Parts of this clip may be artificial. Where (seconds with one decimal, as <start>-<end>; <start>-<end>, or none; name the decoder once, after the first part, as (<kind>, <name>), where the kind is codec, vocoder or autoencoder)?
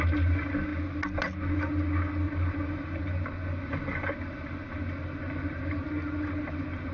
none